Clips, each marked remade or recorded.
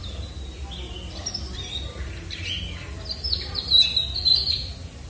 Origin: recorded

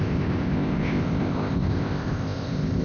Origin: remade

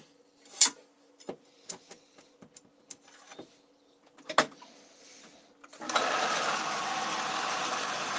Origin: recorded